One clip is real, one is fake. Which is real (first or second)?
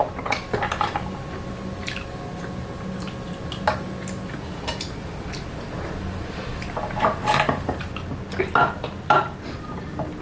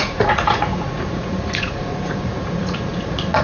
first